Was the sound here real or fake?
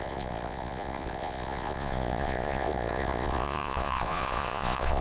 fake